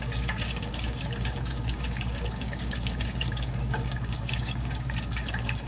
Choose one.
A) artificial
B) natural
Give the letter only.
A